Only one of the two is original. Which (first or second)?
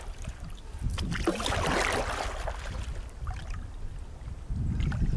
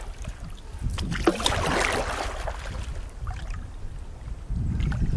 second